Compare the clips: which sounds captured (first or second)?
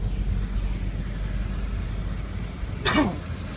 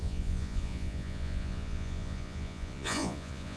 first